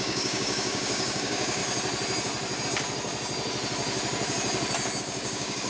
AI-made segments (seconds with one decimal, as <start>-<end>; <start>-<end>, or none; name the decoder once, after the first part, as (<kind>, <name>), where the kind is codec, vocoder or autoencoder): 0.0-1.6 (codec, DAC); 5.0-5.7